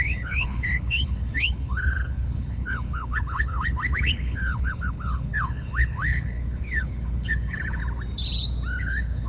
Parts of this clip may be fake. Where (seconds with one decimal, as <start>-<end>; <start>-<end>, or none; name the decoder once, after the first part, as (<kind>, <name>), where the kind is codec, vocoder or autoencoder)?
0.0-7.8 (codec, HILCodec); 8.8-9.3